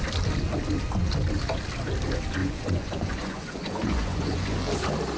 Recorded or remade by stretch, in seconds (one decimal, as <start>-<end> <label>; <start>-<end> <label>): 0.0-2.4 recorded; 2.4-4.6 remade; 4.6-5.2 recorded